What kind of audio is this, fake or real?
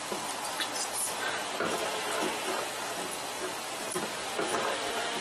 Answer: real